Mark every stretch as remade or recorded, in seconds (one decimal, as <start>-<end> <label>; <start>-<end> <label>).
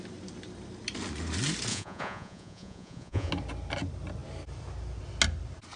0.0-1.7 recorded; 1.7-3.3 remade; 3.3-5.8 recorded